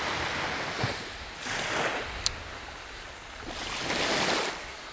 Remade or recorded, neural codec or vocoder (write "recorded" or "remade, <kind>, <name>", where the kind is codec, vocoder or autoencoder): recorded